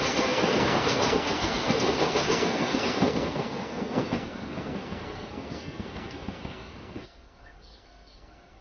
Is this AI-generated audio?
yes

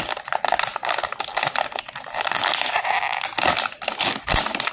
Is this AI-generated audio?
no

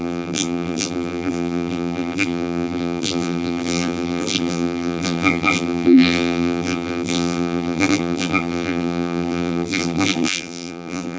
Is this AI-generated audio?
yes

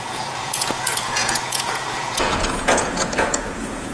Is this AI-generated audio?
yes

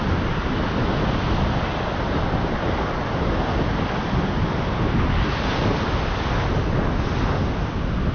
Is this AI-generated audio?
no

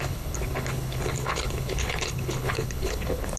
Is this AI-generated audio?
yes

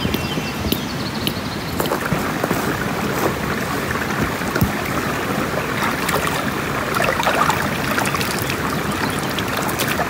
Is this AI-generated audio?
no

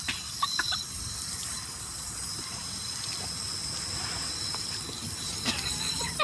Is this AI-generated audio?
no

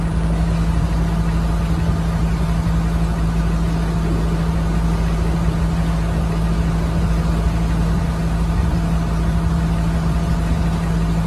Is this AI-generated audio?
no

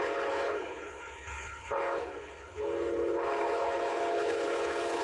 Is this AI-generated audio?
yes